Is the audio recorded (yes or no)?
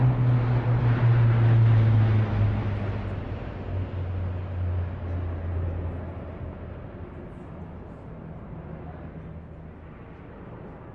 yes